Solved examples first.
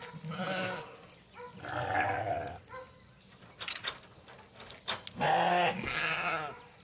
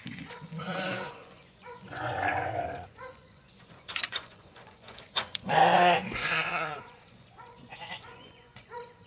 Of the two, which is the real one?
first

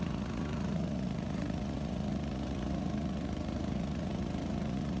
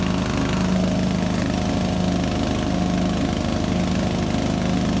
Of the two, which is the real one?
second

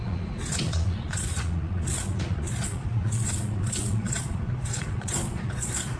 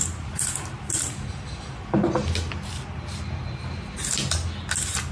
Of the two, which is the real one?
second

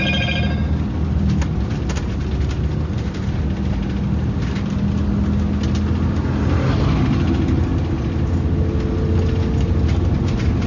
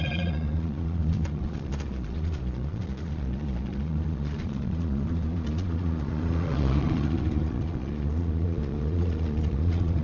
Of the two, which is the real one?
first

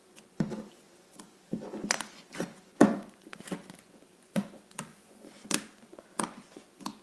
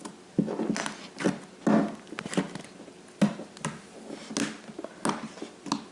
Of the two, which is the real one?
second